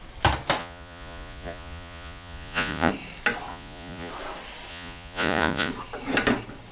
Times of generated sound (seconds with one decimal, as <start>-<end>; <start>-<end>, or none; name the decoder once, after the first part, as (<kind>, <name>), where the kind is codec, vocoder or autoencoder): 0.6-2.9 (vocoder, Vocos); 3.5-4.1; 4.7-5.7